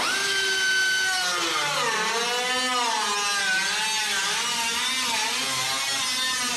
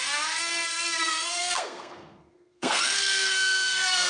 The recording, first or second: first